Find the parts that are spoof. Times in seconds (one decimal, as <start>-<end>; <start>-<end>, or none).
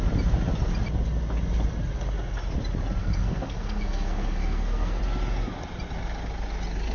3.0-5.0